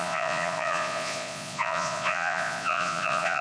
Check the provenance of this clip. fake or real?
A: fake